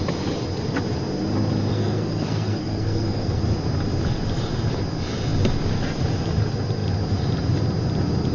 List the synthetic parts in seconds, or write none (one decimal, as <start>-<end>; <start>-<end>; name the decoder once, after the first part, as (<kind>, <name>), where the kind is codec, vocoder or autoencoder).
1.7-3.4 (codec, SNAC)